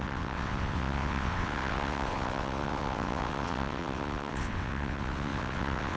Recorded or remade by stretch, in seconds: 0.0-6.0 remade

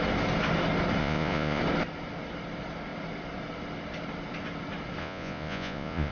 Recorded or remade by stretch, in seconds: 0.0-1.0 recorded; 1.0-1.6 remade; 1.6-5.0 recorded; 5.0-6.1 remade

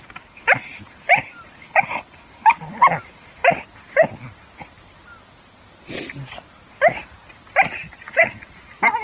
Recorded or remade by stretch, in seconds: 0.0-3.4 remade; 3.4-8.0 recorded; 8.0-9.0 remade

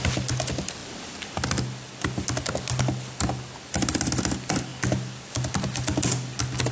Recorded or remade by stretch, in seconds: 0.0-6.7 recorded

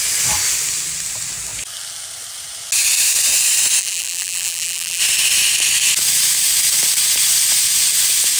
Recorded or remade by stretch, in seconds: 0.0-3.8 recorded; 3.8-5.0 remade; 5.0-8.4 recorded